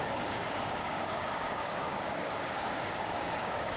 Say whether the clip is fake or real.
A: fake